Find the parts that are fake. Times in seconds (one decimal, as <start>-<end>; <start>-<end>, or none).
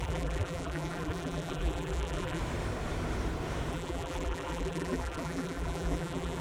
0.0-2.4; 3.7-6.4